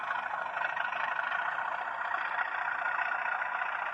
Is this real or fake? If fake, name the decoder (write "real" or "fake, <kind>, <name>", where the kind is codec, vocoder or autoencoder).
real